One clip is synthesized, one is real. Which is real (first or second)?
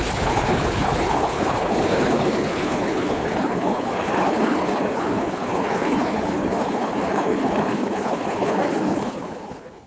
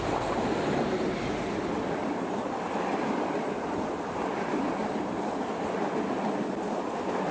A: second